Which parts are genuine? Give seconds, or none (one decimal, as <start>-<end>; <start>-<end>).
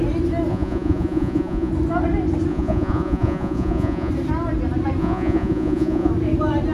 0.0-0.5; 1.7-2.5; 4.1-5.0; 6.1-6.7